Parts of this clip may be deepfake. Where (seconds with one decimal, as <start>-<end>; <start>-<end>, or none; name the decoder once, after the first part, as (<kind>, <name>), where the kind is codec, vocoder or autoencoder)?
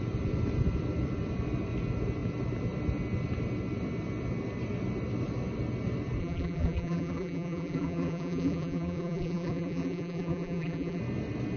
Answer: 6.2-11.0 (vocoder, BigVGAN v2)